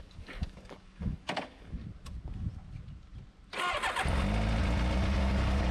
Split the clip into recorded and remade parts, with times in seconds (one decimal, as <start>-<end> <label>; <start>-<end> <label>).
0.0-1.8 remade; 1.8-5.2 recorded; 5.2-5.7 remade